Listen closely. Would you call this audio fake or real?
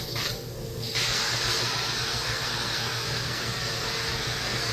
fake